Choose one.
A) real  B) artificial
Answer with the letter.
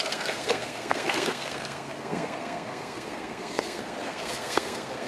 B